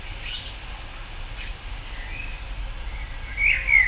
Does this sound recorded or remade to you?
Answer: recorded